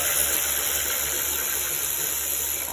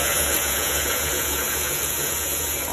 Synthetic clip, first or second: second